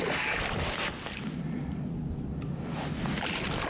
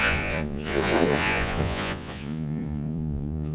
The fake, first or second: second